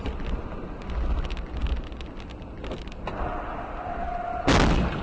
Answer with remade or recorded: recorded